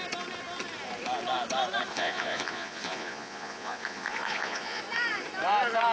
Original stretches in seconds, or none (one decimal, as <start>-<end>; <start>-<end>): 0.0-1.9; 4.8-5.9